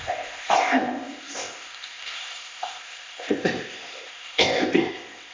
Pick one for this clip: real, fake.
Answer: fake